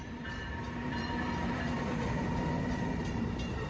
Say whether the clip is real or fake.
fake